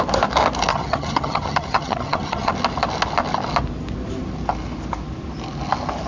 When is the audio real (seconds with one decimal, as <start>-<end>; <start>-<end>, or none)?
0.0-0.7; 2.5-6.1